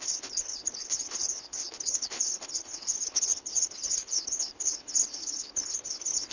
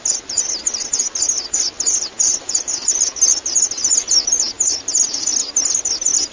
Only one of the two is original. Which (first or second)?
second